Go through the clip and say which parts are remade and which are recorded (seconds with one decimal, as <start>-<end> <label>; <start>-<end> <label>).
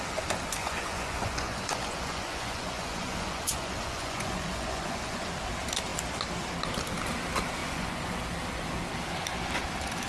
0.0-0.6 recorded; 0.6-5.3 remade; 5.3-7.6 recorded; 7.6-8.2 remade; 8.2-10.1 recorded